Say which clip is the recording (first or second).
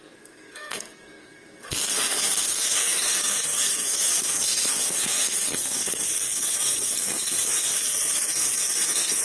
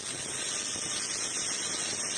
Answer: second